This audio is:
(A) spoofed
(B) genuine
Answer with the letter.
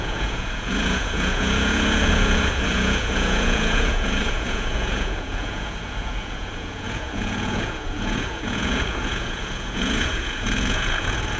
A